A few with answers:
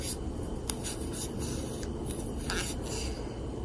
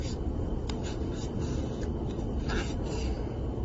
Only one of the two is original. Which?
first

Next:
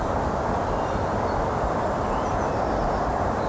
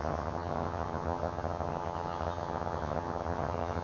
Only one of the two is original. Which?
first